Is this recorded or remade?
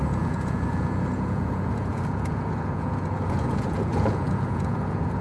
remade